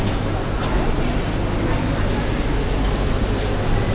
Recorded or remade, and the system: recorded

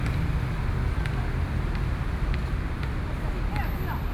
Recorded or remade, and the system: recorded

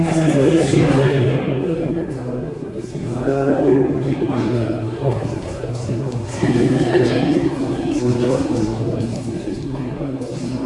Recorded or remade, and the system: remade, codec, SNAC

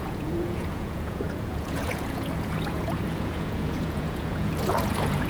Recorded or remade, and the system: remade, vocoder, Vocos